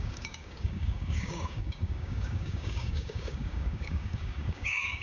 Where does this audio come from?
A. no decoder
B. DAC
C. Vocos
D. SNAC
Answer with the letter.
B